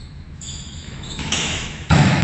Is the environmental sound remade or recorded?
remade